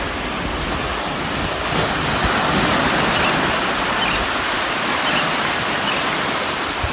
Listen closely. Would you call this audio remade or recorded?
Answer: recorded